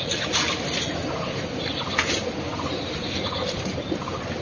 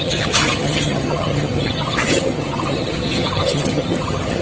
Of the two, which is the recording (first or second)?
first